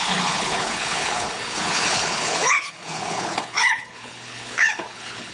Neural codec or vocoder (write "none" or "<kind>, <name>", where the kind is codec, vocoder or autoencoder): codec, HILCodec